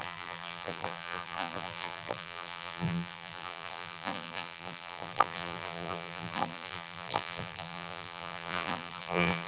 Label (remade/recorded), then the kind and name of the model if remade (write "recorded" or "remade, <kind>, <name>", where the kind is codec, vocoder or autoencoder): remade, vocoder, BigVGAN v2